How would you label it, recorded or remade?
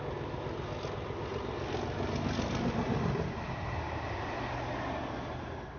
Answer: recorded